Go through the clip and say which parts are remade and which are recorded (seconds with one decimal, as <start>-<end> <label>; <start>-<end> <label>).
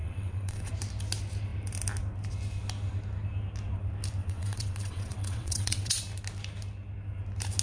0.0-0.7 remade; 0.7-4.2 recorded; 4.2-6.0 remade; 6.0-7.6 recorded